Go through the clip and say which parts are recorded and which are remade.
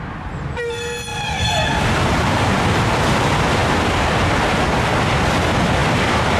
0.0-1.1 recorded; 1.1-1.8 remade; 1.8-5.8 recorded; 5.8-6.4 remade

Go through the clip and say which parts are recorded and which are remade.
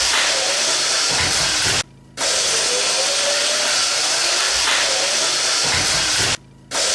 0.0-3.8 recorded; 3.8-4.4 remade; 4.4-6.9 recorded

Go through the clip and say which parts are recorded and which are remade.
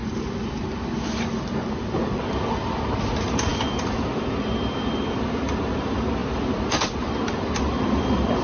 0.0-8.4 remade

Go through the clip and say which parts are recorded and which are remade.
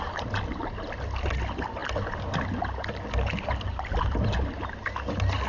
0.0-5.5 recorded